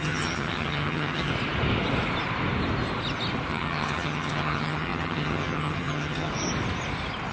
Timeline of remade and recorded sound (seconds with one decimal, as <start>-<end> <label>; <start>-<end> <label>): 0.0-1.3 remade; 1.3-3.5 recorded; 3.5-6.3 remade; 6.3-7.3 recorded